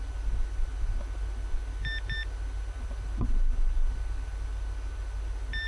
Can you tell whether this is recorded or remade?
recorded